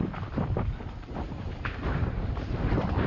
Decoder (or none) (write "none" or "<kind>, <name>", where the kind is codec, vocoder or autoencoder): none